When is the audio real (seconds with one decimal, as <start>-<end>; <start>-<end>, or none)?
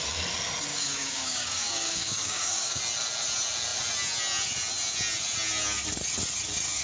0.0-0.7; 2.8-6.8